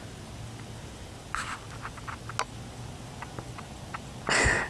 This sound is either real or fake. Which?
real